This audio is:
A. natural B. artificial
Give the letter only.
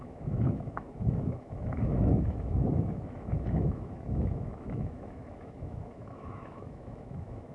B